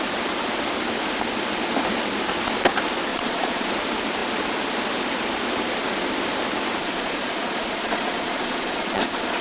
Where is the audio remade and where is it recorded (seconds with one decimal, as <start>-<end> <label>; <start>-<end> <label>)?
0.0-3.1 recorded; 3.1-3.7 remade; 3.7-6.8 recorded; 6.8-9.4 remade